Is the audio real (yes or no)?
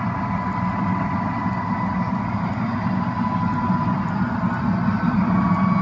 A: yes